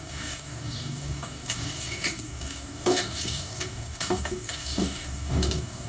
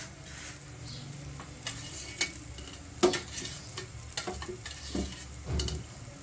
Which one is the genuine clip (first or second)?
second